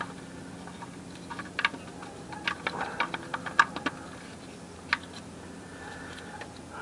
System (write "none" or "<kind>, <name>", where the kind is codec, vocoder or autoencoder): none